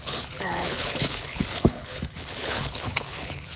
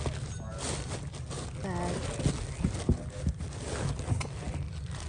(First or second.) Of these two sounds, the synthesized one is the first